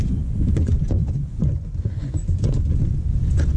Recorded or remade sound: remade